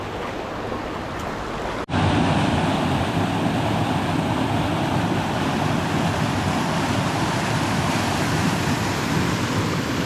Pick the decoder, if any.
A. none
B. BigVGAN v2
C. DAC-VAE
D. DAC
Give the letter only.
A